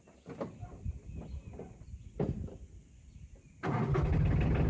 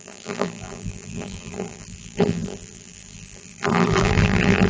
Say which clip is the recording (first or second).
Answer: first